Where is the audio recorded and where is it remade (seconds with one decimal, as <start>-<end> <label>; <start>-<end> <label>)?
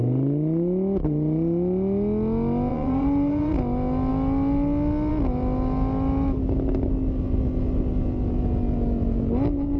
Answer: 0.0-2.7 recorded; 2.7-3.5 remade; 3.5-9.8 recorded